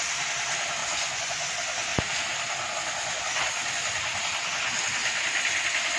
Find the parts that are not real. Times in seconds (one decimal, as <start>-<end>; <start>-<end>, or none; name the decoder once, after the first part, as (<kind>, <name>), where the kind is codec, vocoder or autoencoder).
0.8-1.5 (vocoder, Vocos)